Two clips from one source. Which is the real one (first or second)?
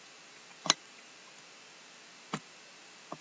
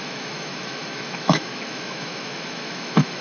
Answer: first